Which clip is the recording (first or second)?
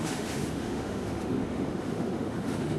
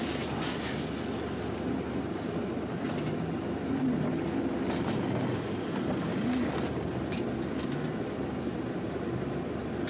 second